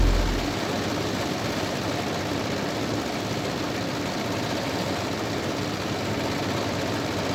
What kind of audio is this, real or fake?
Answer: real